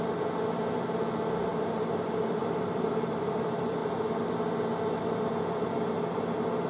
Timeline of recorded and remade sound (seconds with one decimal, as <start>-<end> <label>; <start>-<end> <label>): 0.0-1.5 recorded; 1.5-3.3 remade; 3.3-6.7 recorded